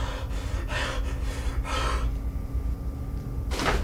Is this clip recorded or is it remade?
recorded